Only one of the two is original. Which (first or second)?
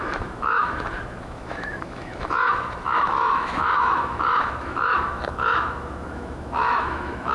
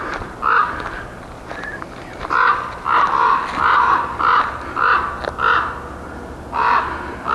second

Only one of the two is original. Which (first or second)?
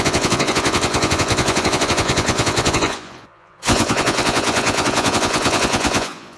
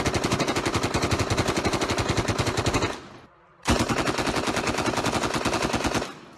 second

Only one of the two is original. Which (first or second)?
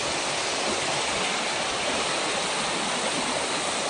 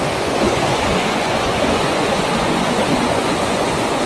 first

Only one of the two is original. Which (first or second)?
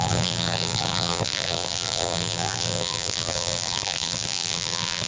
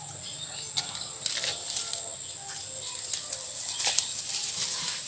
second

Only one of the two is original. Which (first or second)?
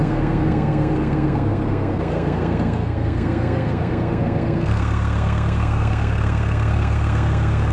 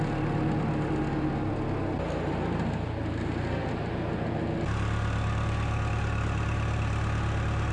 second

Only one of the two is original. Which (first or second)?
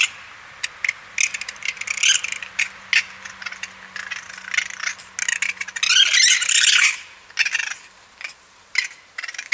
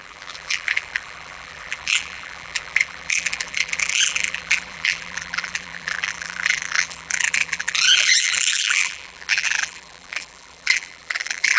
first